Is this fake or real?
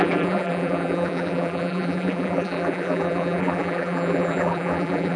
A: fake